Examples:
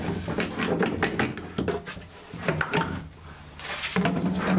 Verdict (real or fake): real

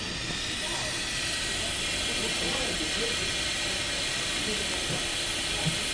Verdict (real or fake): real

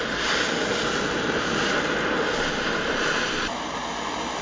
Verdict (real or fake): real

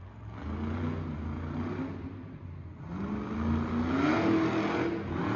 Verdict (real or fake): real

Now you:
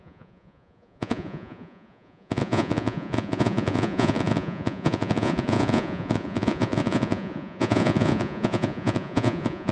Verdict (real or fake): fake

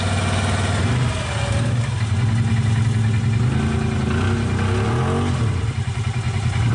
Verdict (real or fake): real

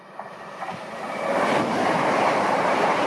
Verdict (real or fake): fake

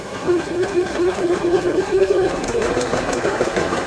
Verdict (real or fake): fake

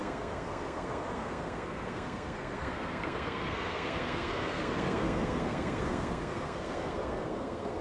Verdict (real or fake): fake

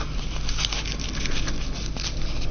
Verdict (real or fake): real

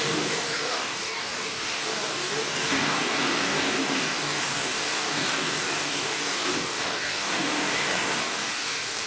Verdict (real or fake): fake